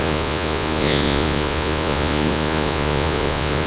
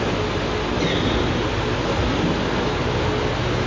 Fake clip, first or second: first